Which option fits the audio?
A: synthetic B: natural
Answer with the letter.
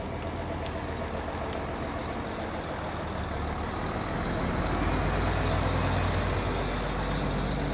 B